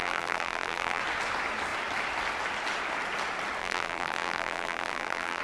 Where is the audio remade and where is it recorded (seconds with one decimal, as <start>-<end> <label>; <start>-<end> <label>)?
0.0-1.0 remade; 1.0-3.6 recorded; 3.6-5.4 remade